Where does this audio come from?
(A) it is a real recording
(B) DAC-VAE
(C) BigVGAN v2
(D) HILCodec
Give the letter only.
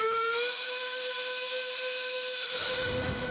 B